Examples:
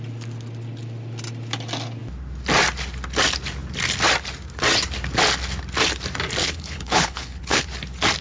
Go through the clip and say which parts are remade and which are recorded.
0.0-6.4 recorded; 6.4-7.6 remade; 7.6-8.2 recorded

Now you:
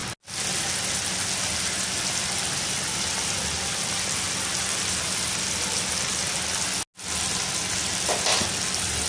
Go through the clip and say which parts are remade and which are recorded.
0.0-9.1 recorded

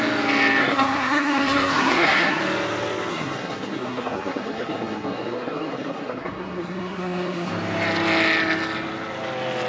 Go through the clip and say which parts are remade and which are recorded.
0.0-0.6 recorded; 0.6-2.4 remade; 2.4-3.1 recorded; 3.1-7.5 remade; 7.5-9.7 recorded

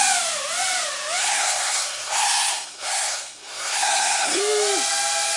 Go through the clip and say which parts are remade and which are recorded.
0.0-1.2 recorded; 1.2-4.4 remade; 4.4-5.4 recorded

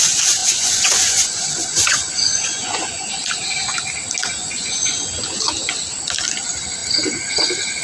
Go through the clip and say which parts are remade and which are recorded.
0.0-0.4 recorded; 0.4-3.1 remade; 3.1-4.4 recorded; 4.4-5.4 remade; 5.4-7.8 recorded

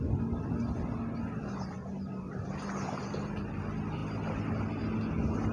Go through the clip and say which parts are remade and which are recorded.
0.0-5.5 recorded